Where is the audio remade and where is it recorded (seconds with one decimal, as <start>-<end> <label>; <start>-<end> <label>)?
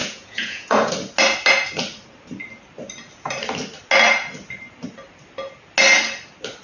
0.0-0.9 remade; 0.9-6.6 recorded